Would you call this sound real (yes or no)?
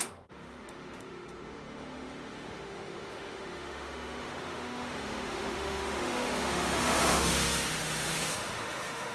no